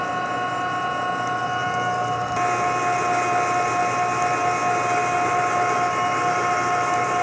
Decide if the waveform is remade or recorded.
recorded